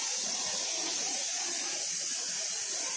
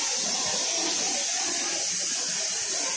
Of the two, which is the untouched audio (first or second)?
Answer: second